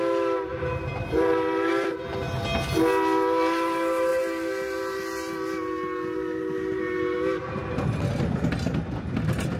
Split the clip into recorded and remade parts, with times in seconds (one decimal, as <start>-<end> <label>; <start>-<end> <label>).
0.0-0.5 recorded; 0.5-1.7 remade; 1.7-9.6 recorded